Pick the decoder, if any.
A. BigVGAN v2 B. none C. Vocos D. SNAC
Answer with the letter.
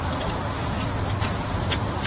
A